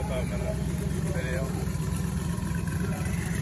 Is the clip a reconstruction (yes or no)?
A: yes